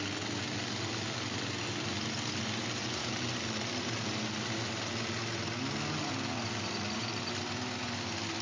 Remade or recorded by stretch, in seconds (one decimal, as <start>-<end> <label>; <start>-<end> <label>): 0.0-8.4 recorded